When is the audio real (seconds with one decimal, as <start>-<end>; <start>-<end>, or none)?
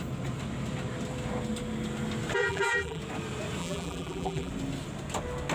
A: 0.0-2.4; 3.0-3.6; 4.5-5.5